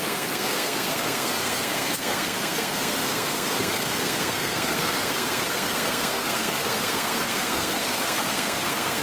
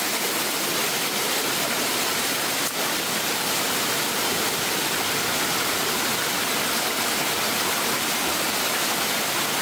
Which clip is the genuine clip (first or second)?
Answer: second